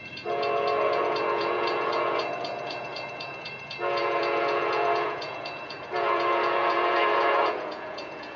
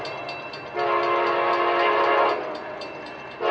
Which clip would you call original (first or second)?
second